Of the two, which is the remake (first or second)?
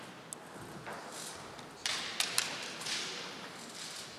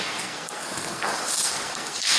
second